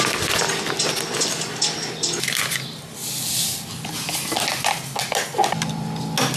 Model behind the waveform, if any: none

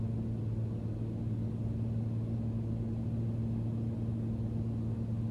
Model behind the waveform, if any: none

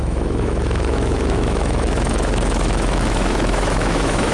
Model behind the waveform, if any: autoencoder, DAC-VAE